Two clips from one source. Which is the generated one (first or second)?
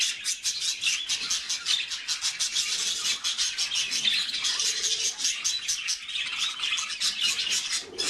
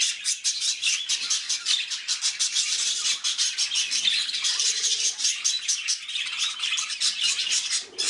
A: second